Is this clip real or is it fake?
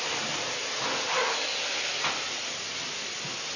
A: real